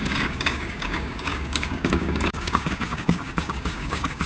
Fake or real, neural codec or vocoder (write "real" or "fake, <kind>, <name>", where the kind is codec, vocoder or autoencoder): fake, codec, DAC